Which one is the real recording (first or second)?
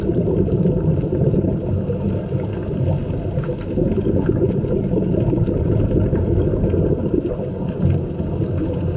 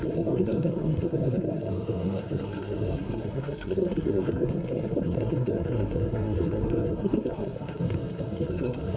first